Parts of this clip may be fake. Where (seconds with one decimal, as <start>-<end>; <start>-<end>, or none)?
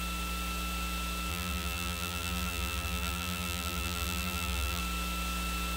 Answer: 1.3-4.8